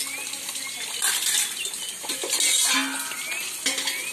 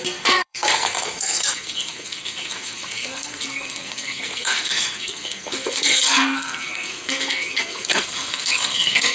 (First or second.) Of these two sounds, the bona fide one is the first